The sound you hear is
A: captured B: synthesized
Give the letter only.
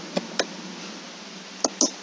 A